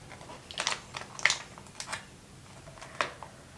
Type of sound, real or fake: real